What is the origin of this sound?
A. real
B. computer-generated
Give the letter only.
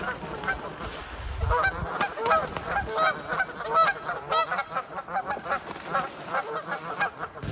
A